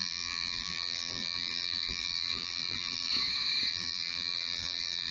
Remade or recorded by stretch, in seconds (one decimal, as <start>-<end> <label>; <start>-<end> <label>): 0.0-3.1 remade; 3.1-3.7 recorded; 3.7-5.1 remade